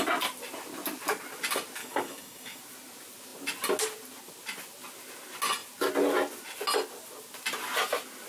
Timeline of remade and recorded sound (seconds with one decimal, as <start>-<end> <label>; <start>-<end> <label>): 0.0-1.8 recorded; 1.8-2.6 remade; 2.6-8.3 recorded